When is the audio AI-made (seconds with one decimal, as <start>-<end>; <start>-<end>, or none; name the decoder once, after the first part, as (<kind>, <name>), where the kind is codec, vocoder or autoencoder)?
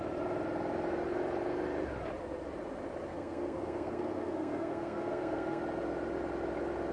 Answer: 3.1-5.6 (codec, SNAC)